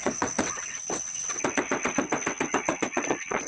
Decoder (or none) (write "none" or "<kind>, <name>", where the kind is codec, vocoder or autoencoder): vocoder, WaveNeXt